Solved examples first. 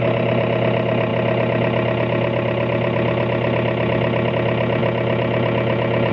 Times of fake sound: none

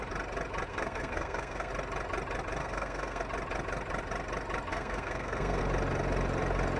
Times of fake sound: 0.7-1.7 (codec, SNAC); 2.6-3.2; 4.7-5.6

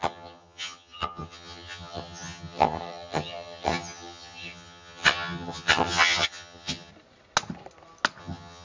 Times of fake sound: 0.0-6.9 (vocoder, HiFi-GAN); 8.2-8.6

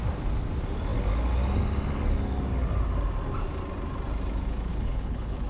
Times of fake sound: 4.7-5.5 (codec, HILCodec)

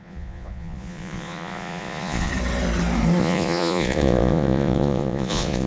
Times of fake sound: 0.0-2.3 (vocoder, Vocos); 3.2-5.7